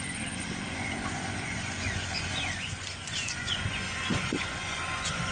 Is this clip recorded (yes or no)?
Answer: no